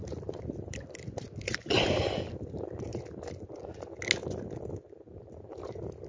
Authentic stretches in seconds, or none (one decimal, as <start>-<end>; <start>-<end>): 3.6-6.1